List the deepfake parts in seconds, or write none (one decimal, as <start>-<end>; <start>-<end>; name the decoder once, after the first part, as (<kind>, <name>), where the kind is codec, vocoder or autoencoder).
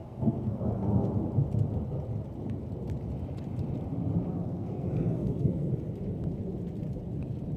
0.0-1.1 (codec, SNAC); 4.3-5.7